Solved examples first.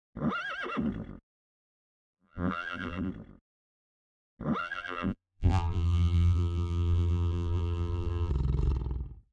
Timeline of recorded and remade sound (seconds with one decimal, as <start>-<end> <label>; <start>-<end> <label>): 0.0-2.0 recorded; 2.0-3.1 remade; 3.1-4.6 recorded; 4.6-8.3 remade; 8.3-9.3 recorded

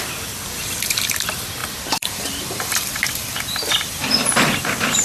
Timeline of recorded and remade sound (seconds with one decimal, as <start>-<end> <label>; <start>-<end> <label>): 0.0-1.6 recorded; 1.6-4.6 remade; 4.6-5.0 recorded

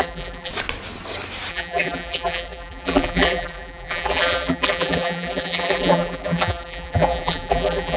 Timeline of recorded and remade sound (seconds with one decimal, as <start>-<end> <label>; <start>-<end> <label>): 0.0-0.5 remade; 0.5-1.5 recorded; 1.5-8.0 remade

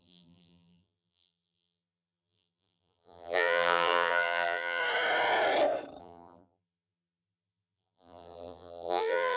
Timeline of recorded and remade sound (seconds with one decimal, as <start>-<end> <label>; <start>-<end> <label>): 0.0-4.8 remade; 4.8-6.0 recorded; 6.0-9.4 remade

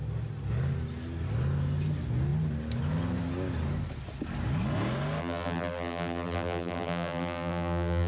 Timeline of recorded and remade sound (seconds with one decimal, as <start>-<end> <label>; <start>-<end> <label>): 0.0-5.2 recorded; 5.2-8.1 remade

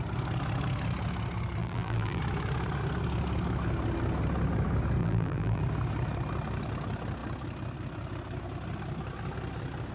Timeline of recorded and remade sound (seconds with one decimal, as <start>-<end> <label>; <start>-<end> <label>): 0.0-1.6 recorded; 1.6-2.2 remade; 2.2-5.0 recorded; 5.0-5.6 remade; 5.6-9.9 recorded

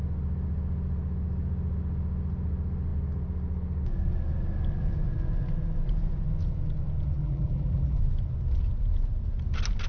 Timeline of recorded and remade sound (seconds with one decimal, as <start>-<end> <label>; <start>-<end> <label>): 0.0-7.2 recorded; 7.2-8.0 remade; 8.0-9.9 recorded

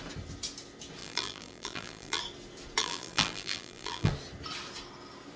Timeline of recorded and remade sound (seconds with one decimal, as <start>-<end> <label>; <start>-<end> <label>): 0.0-1.0 recorded; 1.0-2.2 remade; 2.2-2.8 recorded; 2.8-4.1 remade; 4.1-5.4 recorded